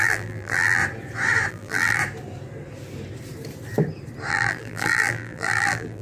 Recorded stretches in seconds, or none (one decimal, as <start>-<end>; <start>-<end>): 0.8-1.5; 2.0-4.3